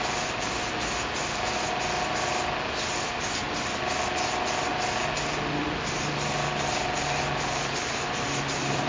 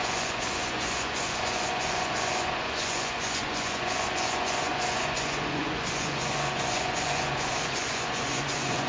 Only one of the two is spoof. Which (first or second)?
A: second